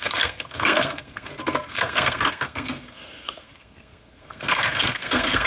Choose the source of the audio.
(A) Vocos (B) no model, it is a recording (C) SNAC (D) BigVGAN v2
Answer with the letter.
C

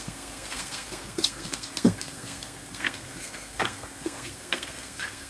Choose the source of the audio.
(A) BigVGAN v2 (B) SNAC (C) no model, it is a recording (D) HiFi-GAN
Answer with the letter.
B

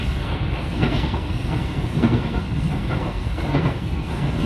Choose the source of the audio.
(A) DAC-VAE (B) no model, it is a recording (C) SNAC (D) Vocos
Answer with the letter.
C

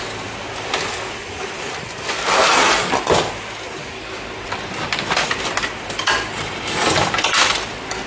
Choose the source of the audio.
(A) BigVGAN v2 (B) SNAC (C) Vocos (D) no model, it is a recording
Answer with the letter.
D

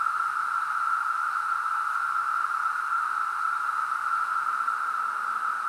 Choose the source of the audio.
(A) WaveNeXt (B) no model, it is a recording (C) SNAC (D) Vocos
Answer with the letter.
B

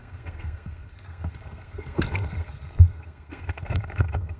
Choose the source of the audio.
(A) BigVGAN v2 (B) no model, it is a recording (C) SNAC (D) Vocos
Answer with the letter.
C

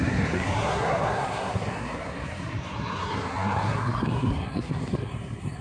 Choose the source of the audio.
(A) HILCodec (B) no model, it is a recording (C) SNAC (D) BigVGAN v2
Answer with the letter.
C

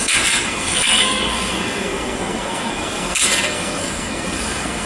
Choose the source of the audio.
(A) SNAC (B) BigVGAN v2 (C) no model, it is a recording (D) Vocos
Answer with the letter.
A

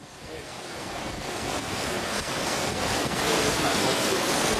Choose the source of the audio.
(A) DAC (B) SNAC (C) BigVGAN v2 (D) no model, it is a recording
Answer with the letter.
B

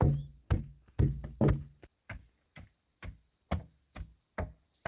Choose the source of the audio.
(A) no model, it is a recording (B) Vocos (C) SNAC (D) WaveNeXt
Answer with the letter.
A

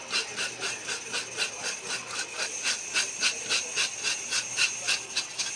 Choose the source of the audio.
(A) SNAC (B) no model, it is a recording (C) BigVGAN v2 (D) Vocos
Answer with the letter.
B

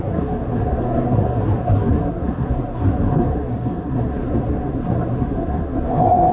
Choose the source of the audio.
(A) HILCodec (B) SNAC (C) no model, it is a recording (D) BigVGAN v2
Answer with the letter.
B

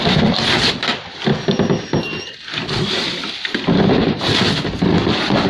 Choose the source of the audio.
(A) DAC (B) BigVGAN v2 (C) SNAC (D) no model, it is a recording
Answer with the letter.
D